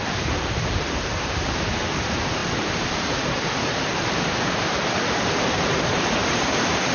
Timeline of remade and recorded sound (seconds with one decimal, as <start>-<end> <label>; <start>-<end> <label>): 0.0-6.9 remade